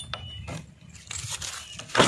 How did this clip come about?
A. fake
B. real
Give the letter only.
B